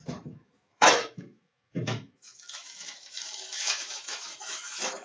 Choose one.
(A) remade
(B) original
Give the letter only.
A